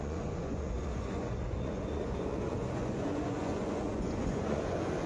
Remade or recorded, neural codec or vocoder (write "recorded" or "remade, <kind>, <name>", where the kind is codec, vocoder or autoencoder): remade, vocoder, Vocos